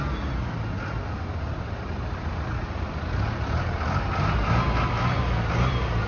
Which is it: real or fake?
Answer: real